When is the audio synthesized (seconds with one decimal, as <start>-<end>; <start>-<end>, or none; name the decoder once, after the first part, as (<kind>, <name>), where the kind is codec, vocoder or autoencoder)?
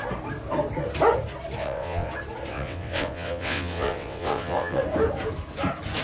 1.6-2.1 (vocoder, WaveNeXt); 2.5-4.8